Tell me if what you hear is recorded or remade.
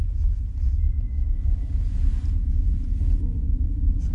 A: recorded